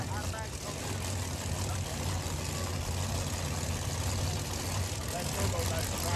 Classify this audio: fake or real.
real